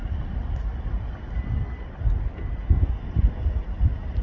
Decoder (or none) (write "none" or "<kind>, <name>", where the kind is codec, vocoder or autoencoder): none